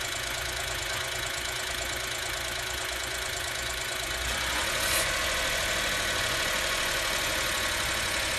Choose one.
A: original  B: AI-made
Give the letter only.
B